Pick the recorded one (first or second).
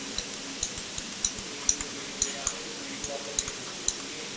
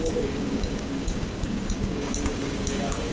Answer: first